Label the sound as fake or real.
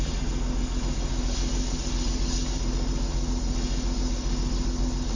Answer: real